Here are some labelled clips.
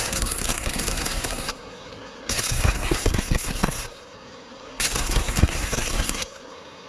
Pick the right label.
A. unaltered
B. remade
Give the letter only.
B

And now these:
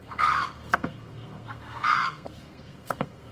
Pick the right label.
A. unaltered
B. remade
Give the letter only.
B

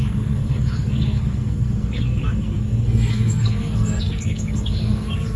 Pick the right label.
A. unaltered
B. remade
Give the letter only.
B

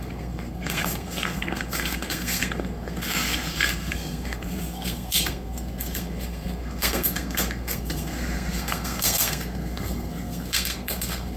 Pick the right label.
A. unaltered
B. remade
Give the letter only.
B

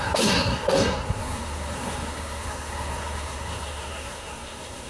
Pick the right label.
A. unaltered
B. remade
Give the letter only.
B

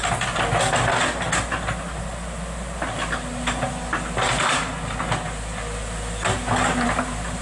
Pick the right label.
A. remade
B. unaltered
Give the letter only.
B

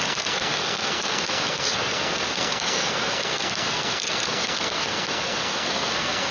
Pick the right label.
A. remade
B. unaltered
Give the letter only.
A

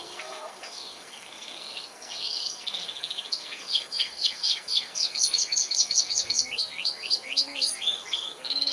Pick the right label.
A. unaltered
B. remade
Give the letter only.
B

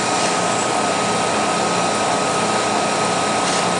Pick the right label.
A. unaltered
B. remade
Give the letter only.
A